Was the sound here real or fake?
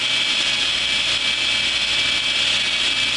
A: real